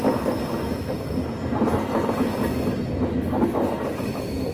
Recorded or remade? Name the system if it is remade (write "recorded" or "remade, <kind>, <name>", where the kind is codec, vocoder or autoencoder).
recorded